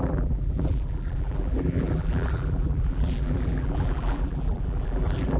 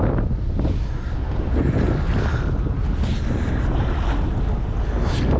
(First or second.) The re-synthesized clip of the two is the first